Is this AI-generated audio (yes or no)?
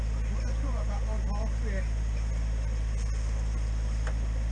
no